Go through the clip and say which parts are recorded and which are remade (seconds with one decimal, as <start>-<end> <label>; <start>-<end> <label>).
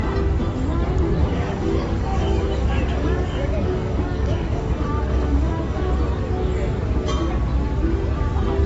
0.0-1.2 recorded; 1.2-5.9 remade; 5.9-8.7 recorded